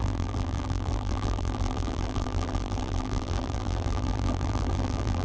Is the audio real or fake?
fake